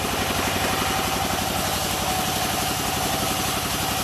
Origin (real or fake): real